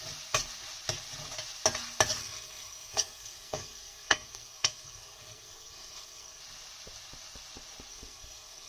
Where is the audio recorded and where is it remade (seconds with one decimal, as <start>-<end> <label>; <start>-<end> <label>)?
0.0-2.2 recorded; 2.2-6.4 remade; 6.4-7.9 recorded; 7.9-8.7 remade